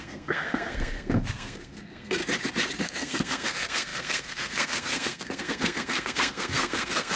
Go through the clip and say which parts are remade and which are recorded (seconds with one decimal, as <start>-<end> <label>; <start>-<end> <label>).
0.0-2.2 remade; 2.2-2.8 recorded; 2.8-7.2 remade

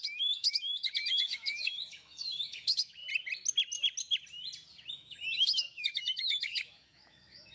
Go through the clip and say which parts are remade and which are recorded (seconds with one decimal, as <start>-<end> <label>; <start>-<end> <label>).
0.0-3.0 remade; 3.0-4.9 recorded; 4.9-7.5 remade

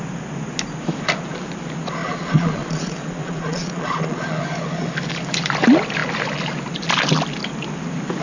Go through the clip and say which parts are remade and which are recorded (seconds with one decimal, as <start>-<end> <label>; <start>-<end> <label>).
0.0-2.0 recorded; 2.0-4.4 remade; 4.4-8.2 recorded

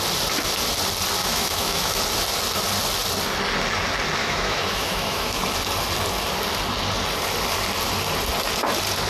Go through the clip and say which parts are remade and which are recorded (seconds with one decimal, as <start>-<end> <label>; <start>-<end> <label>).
0.0-1.2 recorded; 1.2-2.0 remade; 2.0-4.2 recorded; 4.2-5.4 remade; 5.4-9.1 recorded

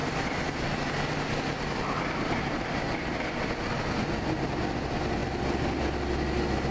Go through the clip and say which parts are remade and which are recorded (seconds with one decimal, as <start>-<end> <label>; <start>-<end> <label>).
0.0-3.5 remade; 3.5-5.2 recorded; 5.2-5.8 remade; 5.8-6.7 recorded

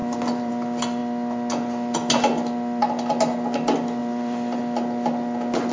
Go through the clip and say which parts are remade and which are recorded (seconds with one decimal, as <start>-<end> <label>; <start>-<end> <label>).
0.0-0.5 remade; 0.5-4.0 recorded; 4.0-4.6 remade; 4.6-5.7 recorded